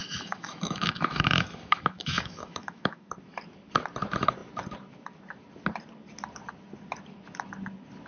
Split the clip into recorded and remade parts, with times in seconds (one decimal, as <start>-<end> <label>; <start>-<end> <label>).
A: 0.0-3.1 remade; 3.1-8.1 recorded